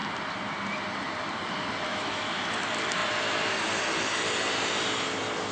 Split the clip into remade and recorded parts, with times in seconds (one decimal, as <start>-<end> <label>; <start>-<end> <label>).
0.0-1.9 recorded; 1.9-2.4 remade; 2.4-5.5 recorded